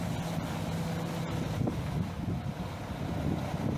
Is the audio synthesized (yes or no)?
no